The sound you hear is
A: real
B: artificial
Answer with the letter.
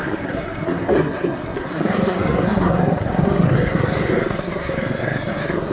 B